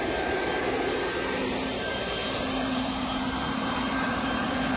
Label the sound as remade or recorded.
remade